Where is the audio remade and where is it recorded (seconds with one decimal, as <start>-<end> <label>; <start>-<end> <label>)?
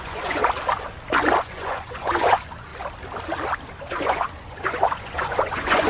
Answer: 0.0-0.4 remade; 0.4-1.4 recorded; 1.4-2.7 remade; 2.7-3.9 recorded; 3.9-5.9 remade